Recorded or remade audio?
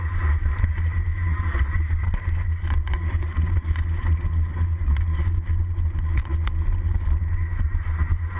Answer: remade